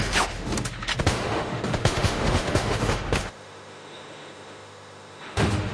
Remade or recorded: remade